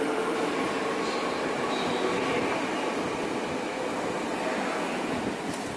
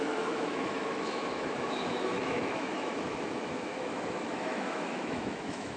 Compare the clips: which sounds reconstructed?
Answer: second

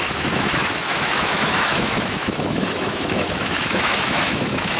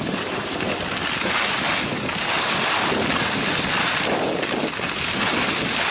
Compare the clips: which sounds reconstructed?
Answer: first